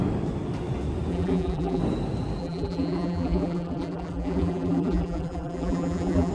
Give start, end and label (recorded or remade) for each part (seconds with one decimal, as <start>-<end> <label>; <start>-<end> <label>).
0.0-1.1 recorded; 1.1-1.8 remade; 1.8-2.4 recorded; 2.4-6.3 remade